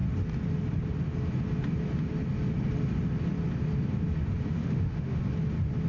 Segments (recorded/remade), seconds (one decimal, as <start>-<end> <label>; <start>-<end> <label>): 0.0-4.6 recorded; 4.6-5.2 remade; 5.2-5.9 recorded